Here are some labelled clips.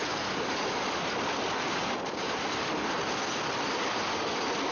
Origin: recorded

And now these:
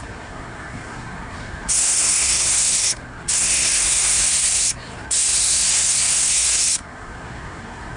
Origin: remade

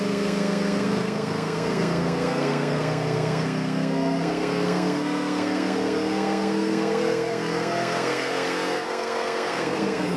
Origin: remade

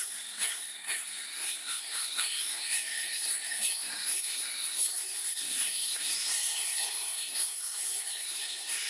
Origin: remade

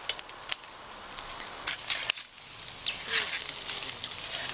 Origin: recorded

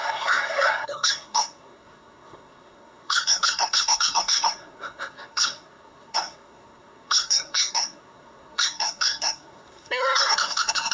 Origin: remade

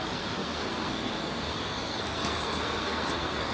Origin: remade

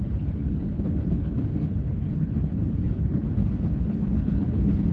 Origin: remade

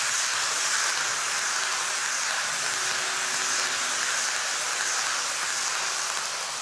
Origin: recorded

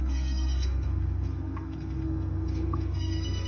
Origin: remade